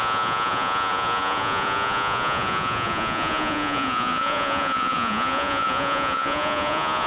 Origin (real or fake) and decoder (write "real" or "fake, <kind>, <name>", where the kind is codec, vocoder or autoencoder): fake, vocoder, Vocos